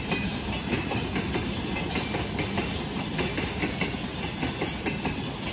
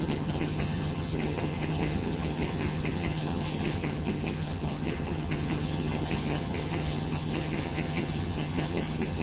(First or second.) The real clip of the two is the first